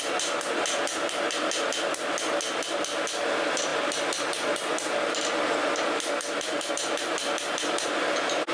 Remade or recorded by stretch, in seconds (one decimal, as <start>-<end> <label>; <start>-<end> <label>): 0.0-8.5 recorded